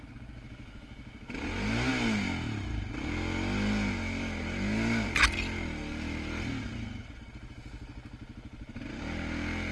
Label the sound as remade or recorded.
recorded